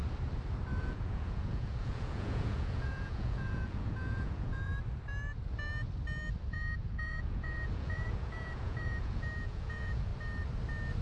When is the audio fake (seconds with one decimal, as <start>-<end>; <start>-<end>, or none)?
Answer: 0.8-4.7; 6.5-10.1